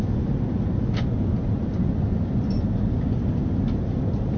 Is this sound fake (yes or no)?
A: no